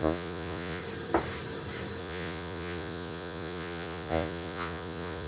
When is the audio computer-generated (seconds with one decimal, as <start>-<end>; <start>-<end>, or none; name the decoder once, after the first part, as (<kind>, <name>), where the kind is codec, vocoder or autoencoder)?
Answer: 0.0-0.8 (vocoder, Vocos); 2.0-5.3